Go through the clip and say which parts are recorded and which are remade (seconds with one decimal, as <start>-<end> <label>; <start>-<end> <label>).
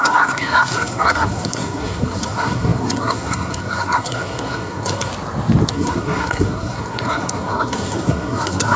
0.0-5.1 remade; 5.1-5.7 recorded; 5.7-8.8 remade